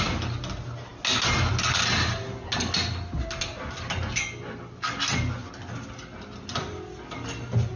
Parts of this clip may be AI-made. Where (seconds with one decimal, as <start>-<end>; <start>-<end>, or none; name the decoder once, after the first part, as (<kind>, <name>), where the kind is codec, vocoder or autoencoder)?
none